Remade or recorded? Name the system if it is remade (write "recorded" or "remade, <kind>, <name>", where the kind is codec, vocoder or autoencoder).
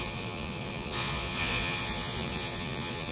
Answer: remade, vocoder, Vocos